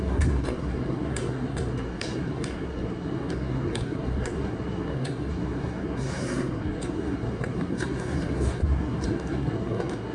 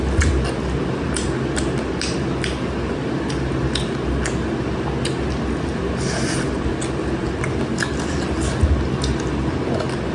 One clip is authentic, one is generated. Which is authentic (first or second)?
second